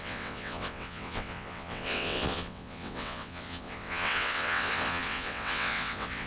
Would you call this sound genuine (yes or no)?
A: no